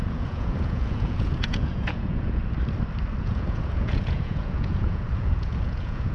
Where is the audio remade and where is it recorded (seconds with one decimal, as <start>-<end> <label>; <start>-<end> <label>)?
0.0-2.4 remade; 2.4-3.2 recorded; 3.2-6.1 remade